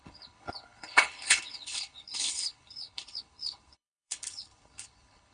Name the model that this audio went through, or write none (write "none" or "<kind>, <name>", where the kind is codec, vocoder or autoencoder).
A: codec, HILCodec